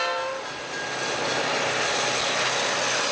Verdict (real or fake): real